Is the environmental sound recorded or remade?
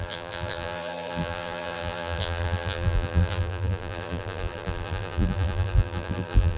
remade